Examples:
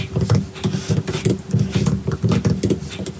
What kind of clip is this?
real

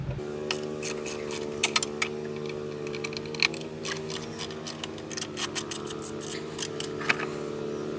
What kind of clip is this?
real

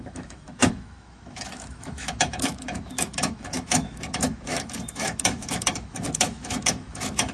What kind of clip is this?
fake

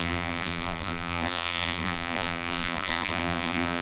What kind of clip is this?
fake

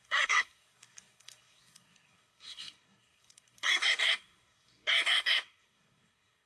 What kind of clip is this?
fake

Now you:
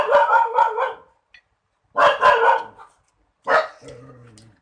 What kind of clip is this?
real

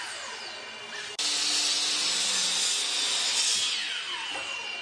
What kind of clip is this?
real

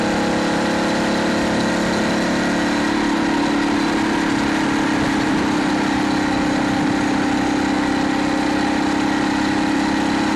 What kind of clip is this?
real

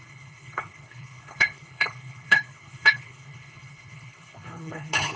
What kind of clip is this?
fake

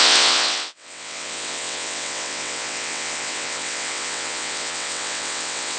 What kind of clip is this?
fake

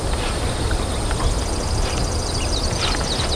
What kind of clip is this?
fake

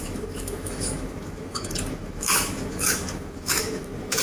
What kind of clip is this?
fake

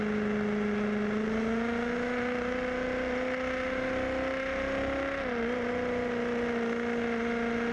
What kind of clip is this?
real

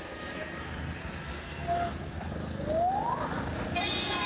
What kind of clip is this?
real